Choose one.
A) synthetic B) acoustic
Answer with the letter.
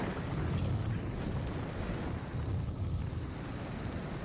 B